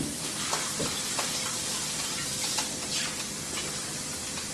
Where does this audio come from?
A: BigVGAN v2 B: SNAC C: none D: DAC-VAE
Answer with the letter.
C